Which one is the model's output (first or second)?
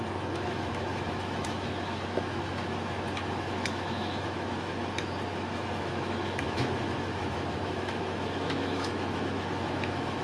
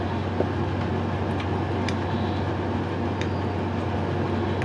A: first